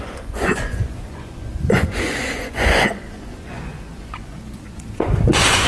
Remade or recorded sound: remade